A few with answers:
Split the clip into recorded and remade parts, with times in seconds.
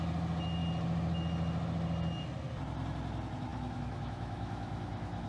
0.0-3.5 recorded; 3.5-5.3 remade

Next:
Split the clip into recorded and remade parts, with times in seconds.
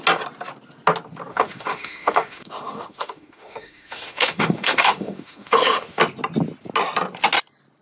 0.0-1.3 recorded; 1.3-6.0 remade; 6.0-7.8 recorded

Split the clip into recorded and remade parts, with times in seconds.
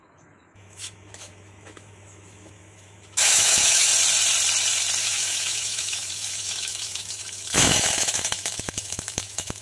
0.0-3.9 remade; 3.9-5.0 recorded; 5.0-9.6 remade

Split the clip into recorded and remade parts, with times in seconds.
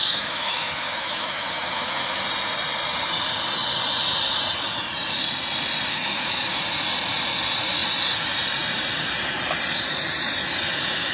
0.0-2.2 remade; 2.2-5.9 recorded; 5.9-6.5 remade; 6.5-11.1 recorded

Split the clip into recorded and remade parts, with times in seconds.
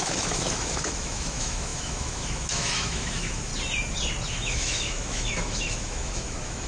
0.0-3.5 remade; 3.5-4.3 recorded; 4.3-6.7 remade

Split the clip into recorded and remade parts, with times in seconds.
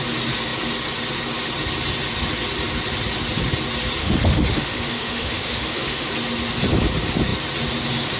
0.0-4.0 recorded; 4.0-6.1 remade; 6.1-8.2 recorded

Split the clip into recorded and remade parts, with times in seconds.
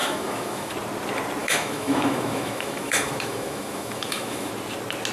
0.0-0.7 remade; 0.7-1.4 recorded; 1.4-4.5 remade; 4.5-5.1 recorded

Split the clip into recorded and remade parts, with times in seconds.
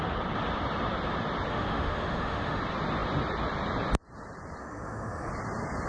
0.0-1.5 recorded; 1.5-2.6 remade; 2.6-4.6 recorded; 4.6-5.3 remade; 5.3-5.9 recorded